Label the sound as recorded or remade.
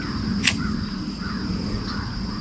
remade